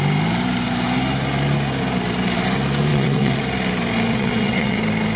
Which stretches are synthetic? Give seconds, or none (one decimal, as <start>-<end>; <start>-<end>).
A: 2.9-3.4; 4.1-4.8

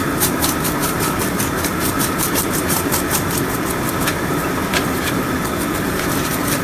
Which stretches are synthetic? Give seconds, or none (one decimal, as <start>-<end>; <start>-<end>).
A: 0.0-6.6

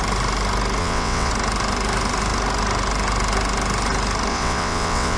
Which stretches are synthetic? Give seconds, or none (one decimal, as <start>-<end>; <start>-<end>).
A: 0.8-1.3; 4.3-5.2

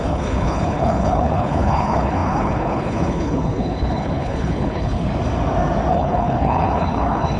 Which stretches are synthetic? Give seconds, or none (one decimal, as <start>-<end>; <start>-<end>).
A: 0.0-5.1; 5.9-7.4

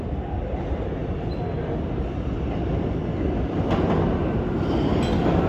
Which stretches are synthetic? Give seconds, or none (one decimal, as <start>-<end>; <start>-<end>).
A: none

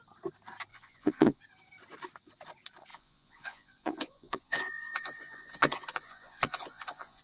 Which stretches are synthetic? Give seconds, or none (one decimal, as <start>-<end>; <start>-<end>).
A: 0.7-1.4; 2.9-7.2

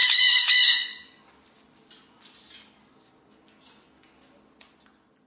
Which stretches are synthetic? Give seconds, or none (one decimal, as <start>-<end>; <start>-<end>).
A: 0.0-0.5